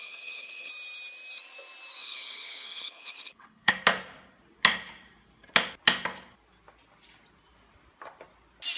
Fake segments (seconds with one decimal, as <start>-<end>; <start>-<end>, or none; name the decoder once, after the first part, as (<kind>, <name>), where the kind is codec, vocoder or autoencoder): 0.0-0.7 (codec, HILCodec); 2.0-3.7